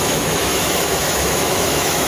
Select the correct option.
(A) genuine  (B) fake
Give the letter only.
B